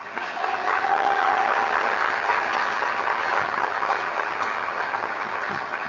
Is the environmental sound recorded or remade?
remade